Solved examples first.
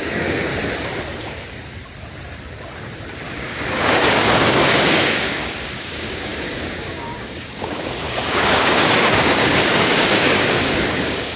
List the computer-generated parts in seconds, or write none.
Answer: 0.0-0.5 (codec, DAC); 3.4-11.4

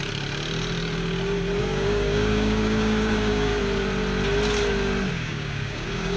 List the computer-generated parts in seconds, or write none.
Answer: 1.6-3.5 (codec, DAC); 5.1-6.2

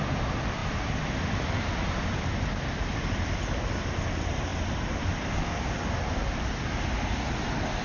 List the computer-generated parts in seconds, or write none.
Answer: none

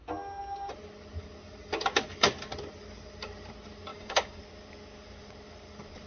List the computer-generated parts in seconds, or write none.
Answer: 3.9-4.4 (codec, DAC)